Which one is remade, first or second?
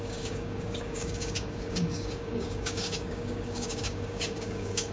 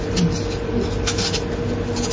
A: first